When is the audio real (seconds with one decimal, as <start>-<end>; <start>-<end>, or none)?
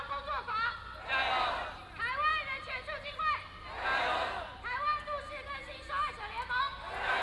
0.0-7.2